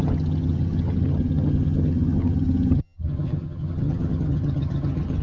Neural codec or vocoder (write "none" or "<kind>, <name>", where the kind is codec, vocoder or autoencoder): vocoder, HiFi-GAN